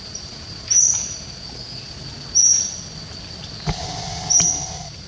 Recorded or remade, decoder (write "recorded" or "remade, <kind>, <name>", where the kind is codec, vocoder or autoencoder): recorded